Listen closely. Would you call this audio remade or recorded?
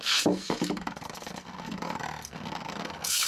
remade